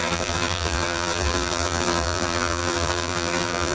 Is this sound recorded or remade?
remade